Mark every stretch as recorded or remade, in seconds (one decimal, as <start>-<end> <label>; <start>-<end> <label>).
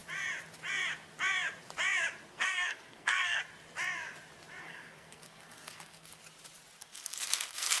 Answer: 0.0-2.3 recorded; 2.3-3.4 remade; 3.4-4.6 recorded; 4.6-6.2 remade; 6.2-6.8 recorded; 6.8-7.8 remade